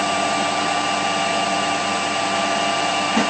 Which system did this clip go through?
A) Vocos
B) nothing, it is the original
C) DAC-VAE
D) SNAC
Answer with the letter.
B